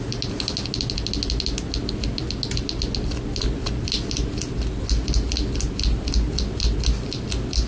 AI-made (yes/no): no